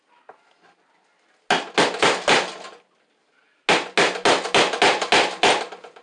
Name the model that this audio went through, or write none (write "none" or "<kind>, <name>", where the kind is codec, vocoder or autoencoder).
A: none